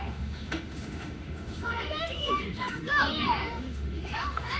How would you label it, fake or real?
fake